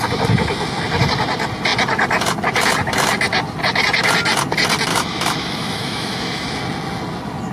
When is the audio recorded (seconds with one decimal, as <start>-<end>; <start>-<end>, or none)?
0.0-4.9; 6.6-7.5